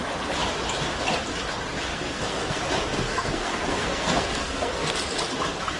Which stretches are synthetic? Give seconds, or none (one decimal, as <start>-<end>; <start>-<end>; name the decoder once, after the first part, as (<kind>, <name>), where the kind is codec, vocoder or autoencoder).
1.9-2.6 (codec, SNAC); 3.1-4.9